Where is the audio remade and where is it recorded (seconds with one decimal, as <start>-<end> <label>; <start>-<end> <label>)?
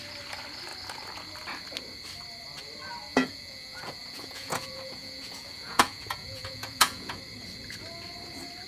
0.0-3.1 recorded; 3.1-7.2 remade; 7.2-8.7 recorded